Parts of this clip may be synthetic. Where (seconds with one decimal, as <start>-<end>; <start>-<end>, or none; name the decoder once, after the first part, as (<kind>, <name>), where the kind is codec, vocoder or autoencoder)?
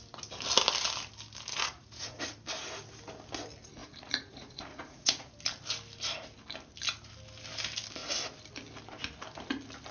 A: 1.5-2.2 (vocoder, Vocos); 3.8-5.3